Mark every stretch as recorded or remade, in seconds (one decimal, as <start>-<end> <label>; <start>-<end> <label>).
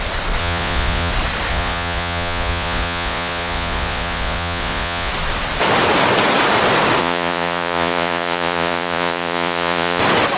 0.0-0.4 recorded; 0.4-1.1 remade; 1.1-1.5 recorded; 1.5-5.1 remade; 5.1-7.0 recorded; 7.0-10.0 remade; 10.0-10.4 recorded